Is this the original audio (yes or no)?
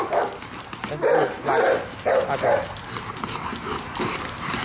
yes